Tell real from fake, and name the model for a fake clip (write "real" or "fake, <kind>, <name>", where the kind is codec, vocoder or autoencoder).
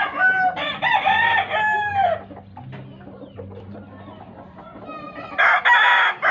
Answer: real